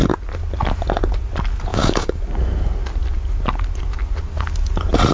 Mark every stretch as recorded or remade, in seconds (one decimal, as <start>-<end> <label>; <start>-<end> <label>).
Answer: 0.0-1.7 recorded; 1.7-2.2 remade; 2.2-5.1 recorded